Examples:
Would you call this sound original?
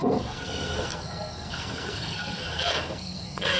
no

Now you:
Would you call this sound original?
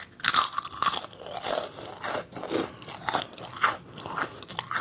yes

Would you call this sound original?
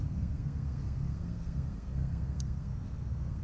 no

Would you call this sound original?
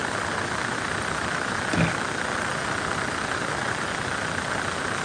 yes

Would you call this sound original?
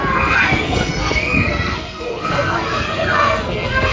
no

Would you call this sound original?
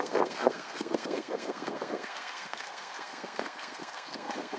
no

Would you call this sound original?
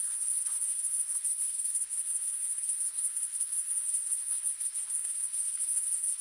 no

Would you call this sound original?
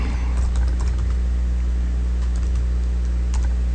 yes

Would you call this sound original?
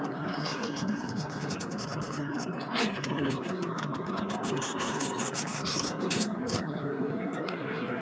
no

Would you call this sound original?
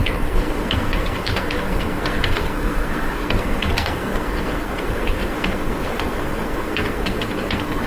no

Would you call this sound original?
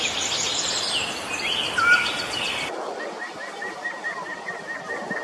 yes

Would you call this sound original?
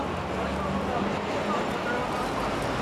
yes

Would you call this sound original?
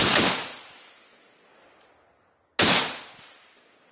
yes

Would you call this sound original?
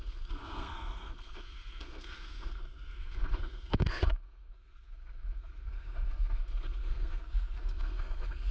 no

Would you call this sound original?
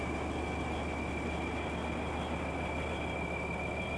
yes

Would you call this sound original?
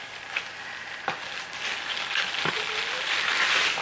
yes